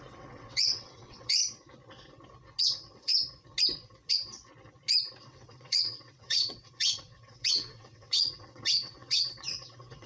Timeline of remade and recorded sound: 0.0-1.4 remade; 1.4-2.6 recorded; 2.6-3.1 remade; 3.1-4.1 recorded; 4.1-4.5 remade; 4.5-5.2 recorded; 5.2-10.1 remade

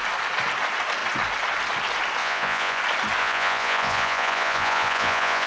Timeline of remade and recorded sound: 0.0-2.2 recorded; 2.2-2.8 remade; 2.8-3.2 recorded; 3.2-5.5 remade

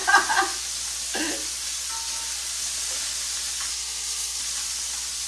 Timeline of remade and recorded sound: 0.0-3.7 recorded; 3.7-4.4 remade; 4.4-5.3 recorded

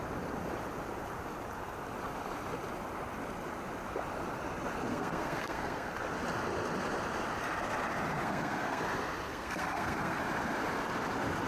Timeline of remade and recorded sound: 0.0-4.9 recorded; 4.9-5.9 remade; 5.9-8.2 recorded; 8.2-8.8 remade; 8.8-9.3 recorded; 9.3-10.2 remade; 10.2-11.5 recorded

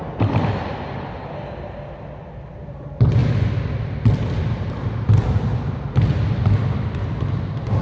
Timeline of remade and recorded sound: 0.0-7.8 recorded

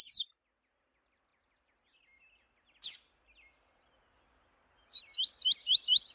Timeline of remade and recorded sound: 0.0-6.1 recorded